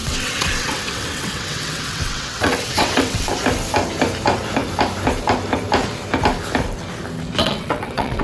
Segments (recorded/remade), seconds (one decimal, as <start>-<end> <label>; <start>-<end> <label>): 0.0-3.3 remade; 3.3-7.4 recorded; 7.4-8.2 remade